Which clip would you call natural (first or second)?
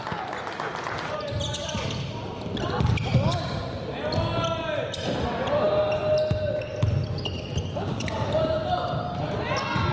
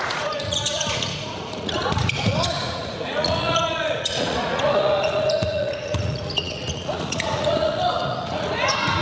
first